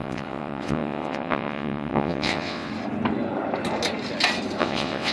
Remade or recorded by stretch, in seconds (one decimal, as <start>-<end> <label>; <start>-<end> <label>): 0.0-2.7 remade; 2.7-4.6 recorded; 4.6-5.1 remade